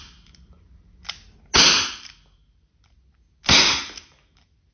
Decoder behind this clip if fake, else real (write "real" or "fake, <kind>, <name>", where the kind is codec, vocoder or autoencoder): real